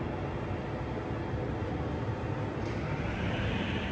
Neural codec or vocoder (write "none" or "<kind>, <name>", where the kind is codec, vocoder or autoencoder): none